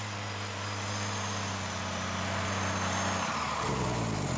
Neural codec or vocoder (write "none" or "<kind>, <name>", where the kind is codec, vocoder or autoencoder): none